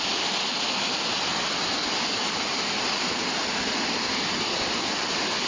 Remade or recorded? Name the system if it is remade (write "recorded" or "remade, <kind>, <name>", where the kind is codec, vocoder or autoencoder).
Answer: recorded